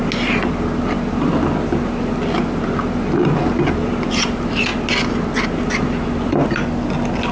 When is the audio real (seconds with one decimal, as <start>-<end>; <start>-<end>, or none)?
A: 0.0-7.3